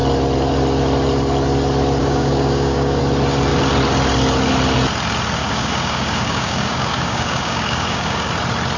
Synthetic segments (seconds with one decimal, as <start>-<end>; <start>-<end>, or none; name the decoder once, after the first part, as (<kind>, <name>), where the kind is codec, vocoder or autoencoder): 2.0-3.0 (codec, DAC); 5.4-8.3